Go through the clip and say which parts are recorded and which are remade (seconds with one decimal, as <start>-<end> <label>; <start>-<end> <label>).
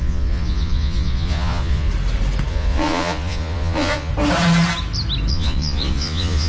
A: 0.0-1.9 remade; 1.9-2.5 recorded; 2.5-4.1 remade; 4.1-5.3 recorded; 5.3-6.5 remade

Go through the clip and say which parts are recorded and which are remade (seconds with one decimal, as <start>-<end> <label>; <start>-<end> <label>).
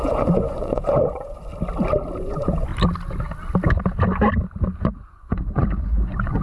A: 0.0-1.5 remade; 1.5-2.2 recorded; 2.2-2.7 remade; 2.7-4.8 recorded; 4.8-6.4 remade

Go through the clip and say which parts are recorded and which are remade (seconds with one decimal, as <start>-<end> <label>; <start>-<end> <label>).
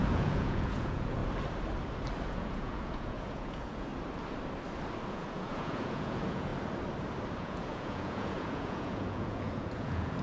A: 0.0-1.2 remade; 1.2-2.3 recorded; 2.3-3.9 remade; 3.9-5.1 recorded; 5.1-6.5 remade; 6.5-7.4 recorded; 7.4-10.2 remade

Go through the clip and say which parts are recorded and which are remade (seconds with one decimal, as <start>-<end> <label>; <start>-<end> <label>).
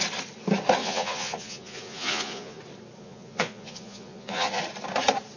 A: 0.0-0.8 recorded; 0.8-2.6 remade; 2.6-3.0 recorded; 3.0-4.6 remade; 4.6-5.4 recorded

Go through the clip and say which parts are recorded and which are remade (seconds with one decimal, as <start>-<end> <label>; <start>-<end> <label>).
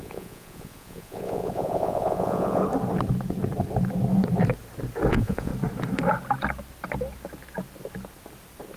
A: 0.0-2.6 remade; 2.6-5.1 recorded; 5.1-5.5 remade; 5.5-8.8 recorded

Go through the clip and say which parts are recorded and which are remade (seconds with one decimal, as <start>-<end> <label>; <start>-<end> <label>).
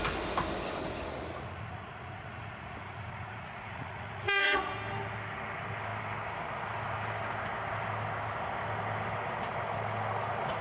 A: 0.0-1.1 recorded; 1.1-4.7 remade; 4.7-10.6 recorded